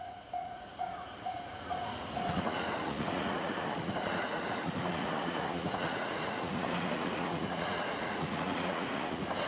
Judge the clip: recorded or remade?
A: remade